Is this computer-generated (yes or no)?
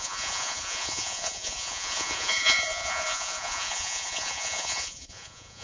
yes